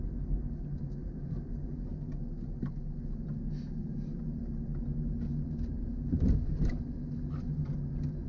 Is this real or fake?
real